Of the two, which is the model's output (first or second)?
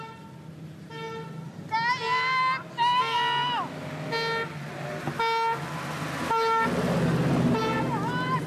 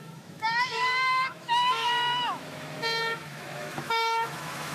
second